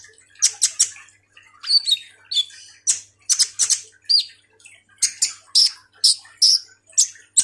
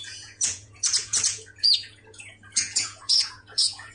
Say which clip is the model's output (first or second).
second